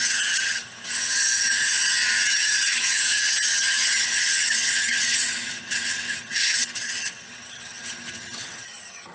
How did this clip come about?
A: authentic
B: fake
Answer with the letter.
B